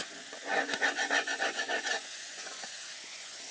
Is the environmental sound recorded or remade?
remade